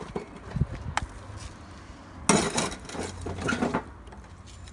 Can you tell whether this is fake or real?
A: real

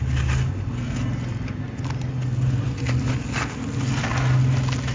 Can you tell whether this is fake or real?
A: real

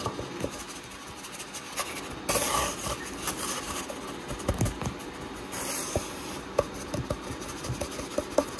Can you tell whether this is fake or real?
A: real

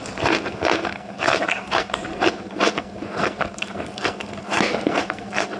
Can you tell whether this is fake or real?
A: fake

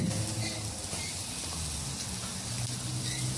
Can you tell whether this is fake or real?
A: real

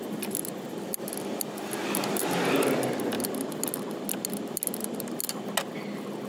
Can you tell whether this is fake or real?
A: real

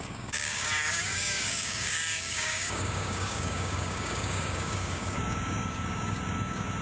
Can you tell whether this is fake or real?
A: fake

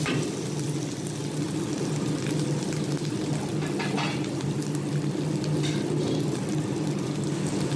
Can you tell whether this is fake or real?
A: real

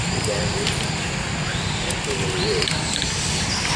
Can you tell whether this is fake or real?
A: real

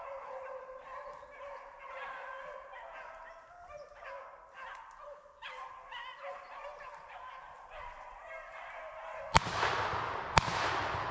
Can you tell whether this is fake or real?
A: real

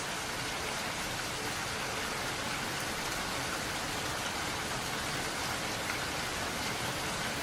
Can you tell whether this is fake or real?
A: real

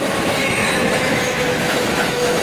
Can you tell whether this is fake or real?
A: fake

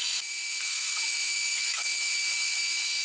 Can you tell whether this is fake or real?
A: fake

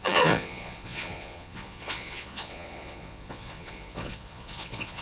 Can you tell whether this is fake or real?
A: fake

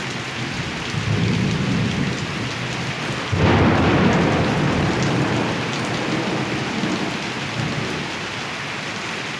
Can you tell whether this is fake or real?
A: real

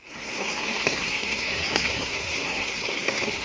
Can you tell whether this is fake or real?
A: fake